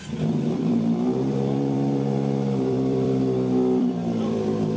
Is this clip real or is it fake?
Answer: fake